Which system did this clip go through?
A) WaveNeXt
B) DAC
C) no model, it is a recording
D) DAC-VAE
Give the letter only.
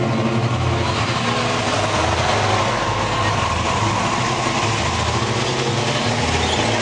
C